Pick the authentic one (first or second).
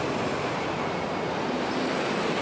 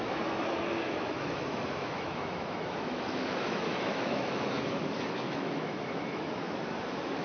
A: first